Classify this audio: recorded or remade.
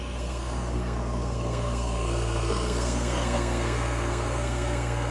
remade